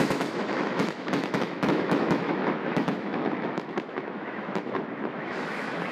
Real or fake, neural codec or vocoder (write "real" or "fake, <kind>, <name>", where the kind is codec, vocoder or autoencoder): fake, autoencoder, DAC-VAE